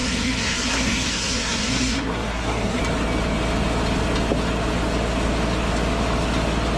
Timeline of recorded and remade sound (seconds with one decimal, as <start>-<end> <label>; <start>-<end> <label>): 0.0-2.8 remade; 2.8-6.8 recorded